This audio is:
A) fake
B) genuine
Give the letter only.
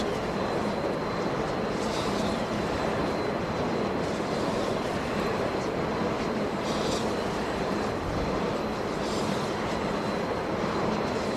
A